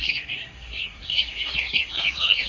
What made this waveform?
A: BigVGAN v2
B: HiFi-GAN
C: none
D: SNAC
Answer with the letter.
D